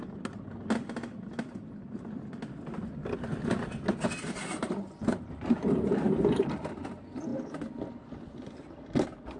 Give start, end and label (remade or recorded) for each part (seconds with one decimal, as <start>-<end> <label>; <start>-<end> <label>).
0.0-9.4 recorded